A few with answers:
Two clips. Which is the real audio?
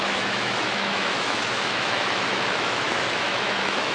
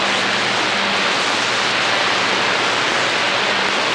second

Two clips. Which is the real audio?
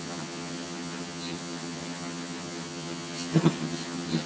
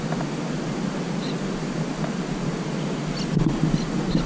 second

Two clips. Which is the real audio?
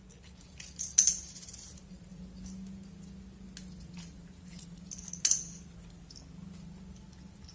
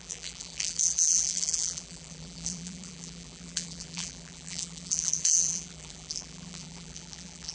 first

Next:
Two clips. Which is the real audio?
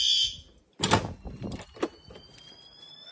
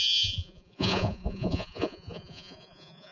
first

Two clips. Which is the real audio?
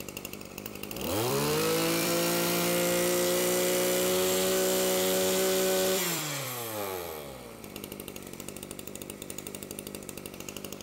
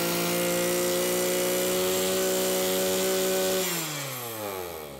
second